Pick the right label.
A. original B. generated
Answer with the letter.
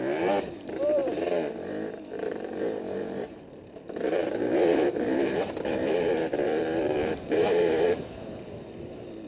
B